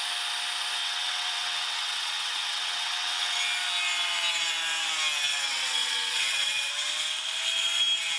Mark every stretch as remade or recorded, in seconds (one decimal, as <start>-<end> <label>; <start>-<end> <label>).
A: 0.0-0.8 recorded; 0.8-3.4 remade; 3.4-5.3 recorded; 5.3-6.7 remade; 6.7-8.2 recorded

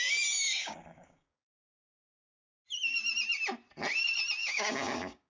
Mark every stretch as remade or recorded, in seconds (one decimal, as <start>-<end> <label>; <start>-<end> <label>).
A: 0.0-0.6 recorded; 0.6-2.2 remade; 2.2-4.4 recorded; 4.4-5.3 remade

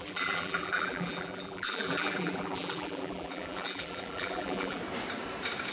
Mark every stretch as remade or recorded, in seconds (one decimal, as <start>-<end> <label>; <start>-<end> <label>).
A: 0.0-4.8 remade; 4.8-5.7 recorded

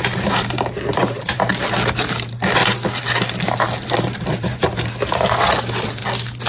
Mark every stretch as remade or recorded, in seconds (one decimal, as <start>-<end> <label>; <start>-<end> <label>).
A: 0.0-2.6 remade; 2.6-4.0 recorded; 4.0-6.0 remade; 6.0-6.5 recorded

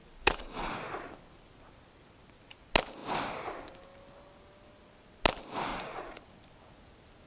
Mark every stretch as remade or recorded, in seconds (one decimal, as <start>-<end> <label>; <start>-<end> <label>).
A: 0.0-0.7 remade; 0.7-5.7 recorded; 5.7-6.2 remade; 6.2-7.3 recorded

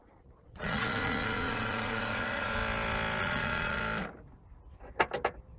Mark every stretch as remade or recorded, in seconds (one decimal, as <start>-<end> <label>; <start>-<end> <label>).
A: 0.0-2.6 remade; 2.6-3.2 recorded; 3.2-3.8 remade; 3.8-5.6 recorded

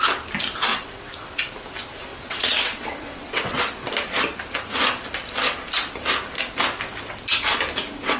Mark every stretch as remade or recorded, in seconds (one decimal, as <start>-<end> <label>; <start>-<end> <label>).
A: 0.0-0.7 recorded; 0.7-1.2 remade; 1.2-2.1 recorded; 2.1-3.6 remade; 3.6-8.2 recorded

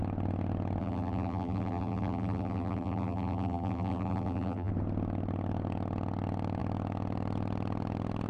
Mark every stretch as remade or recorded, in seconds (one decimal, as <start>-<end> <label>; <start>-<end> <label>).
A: 0.0-0.8 recorded; 0.8-4.7 remade; 4.7-8.3 recorded